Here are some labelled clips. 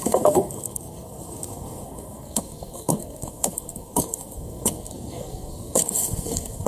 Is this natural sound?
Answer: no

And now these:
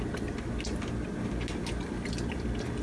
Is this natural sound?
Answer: yes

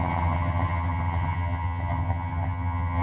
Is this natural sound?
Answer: no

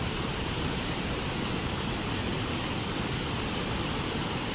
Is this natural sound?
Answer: yes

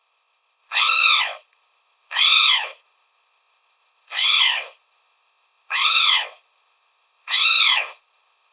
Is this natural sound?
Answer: no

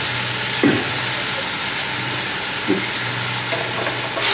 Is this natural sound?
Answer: yes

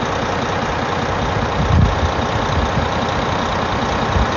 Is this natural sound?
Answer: yes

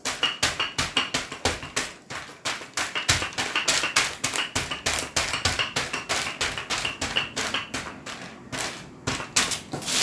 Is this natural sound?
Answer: yes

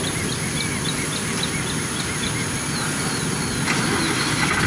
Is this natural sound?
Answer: yes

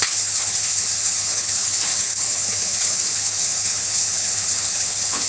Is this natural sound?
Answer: no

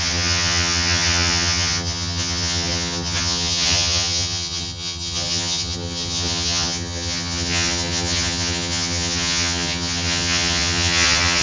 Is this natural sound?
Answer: no